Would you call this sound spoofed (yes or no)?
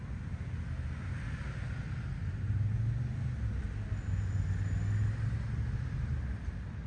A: no